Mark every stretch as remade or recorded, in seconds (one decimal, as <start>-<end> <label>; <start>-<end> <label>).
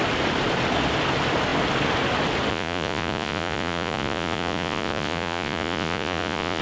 0.0-2.5 recorded; 2.5-6.6 remade